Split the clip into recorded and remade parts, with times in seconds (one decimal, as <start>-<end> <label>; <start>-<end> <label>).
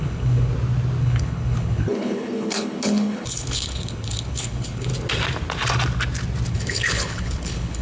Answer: 0.0-0.5 remade; 0.5-1.0 recorded; 1.0-4.9 remade; 4.9-6.5 recorded; 6.5-7.8 remade